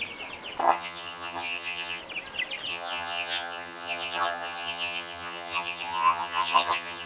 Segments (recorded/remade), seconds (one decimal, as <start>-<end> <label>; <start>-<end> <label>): 0.0-0.6 recorded; 0.6-2.0 remade; 2.0-2.7 recorded; 2.7-7.1 remade